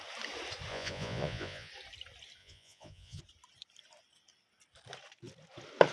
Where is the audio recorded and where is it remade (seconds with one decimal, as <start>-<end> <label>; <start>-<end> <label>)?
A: 0.0-0.7 recorded; 0.7-1.7 remade; 1.7-2.4 recorded; 2.4-3.2 remade; 3.2-5.9 recorded